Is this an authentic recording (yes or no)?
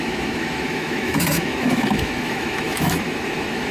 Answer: no